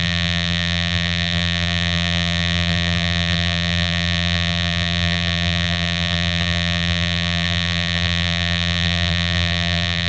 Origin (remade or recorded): remade